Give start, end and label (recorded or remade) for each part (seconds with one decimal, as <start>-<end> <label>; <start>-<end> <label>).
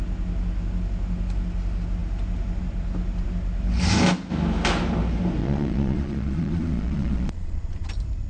0.0-5.4 recorded; 5.4-7.9 remade; 7.9-8.3 recorded